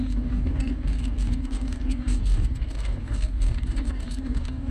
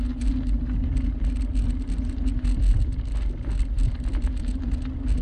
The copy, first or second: first